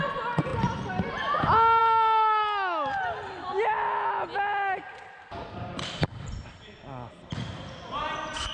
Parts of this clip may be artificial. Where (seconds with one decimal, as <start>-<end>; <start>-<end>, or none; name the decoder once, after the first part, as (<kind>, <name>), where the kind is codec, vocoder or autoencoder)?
none